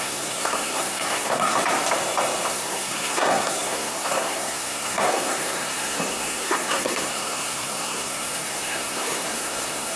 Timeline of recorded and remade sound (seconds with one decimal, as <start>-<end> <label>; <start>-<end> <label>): 0.0-1.6 remade; 1.6-2.5 recorded; 2.5-10.0 remade